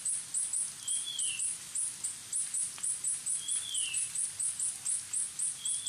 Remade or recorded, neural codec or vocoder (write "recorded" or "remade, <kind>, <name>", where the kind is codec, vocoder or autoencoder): recorded